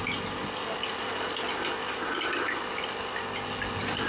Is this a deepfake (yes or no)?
no